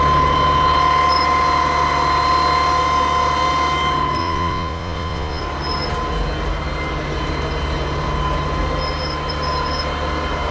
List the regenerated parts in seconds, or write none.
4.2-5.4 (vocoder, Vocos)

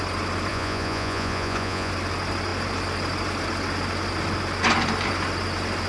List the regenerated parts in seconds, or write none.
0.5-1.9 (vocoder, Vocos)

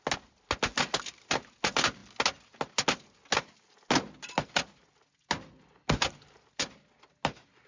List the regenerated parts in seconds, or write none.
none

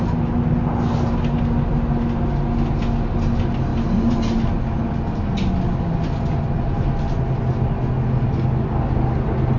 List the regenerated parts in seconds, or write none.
none

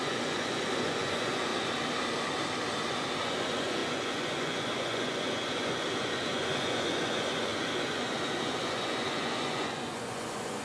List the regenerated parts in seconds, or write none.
0.0-1.5 (vocoder, Vocos); 3.2-10.6

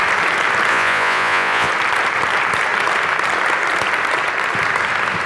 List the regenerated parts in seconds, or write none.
0.7-1.7 (vocoder, Vocos)

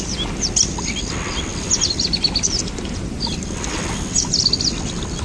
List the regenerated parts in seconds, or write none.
none